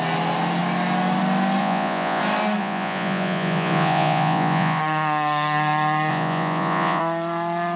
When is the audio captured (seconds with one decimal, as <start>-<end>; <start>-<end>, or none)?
0.0-1.6; 2.2-2.6; 4.8-6.1; 7.0-7.8